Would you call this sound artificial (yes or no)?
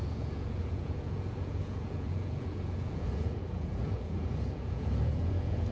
yes